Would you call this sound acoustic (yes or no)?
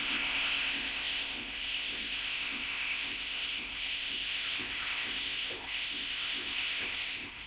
no